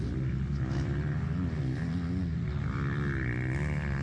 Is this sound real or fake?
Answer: real